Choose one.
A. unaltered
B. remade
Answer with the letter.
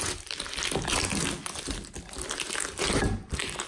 A